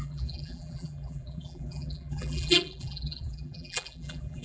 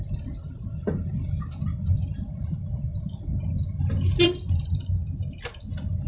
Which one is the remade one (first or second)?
first